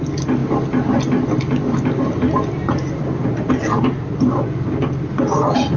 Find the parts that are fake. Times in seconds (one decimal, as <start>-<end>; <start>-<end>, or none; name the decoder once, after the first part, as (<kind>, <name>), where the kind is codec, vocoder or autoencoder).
none